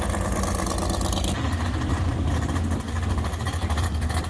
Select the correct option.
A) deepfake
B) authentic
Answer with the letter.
B